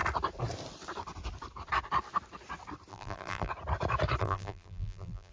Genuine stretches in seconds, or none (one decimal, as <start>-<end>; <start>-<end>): 0.0-2.9; 3.5-4.2